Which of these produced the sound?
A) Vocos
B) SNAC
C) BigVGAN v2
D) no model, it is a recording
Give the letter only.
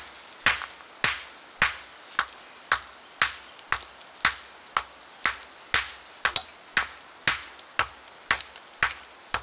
D